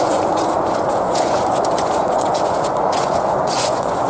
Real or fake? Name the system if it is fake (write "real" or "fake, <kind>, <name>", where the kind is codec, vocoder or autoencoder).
fake, vocoder, Vocos